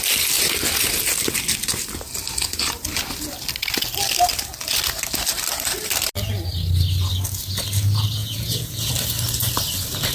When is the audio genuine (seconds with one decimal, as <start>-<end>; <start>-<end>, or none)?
0.0-8.2; 8.9-10.1